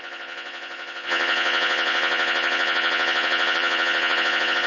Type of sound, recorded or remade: remade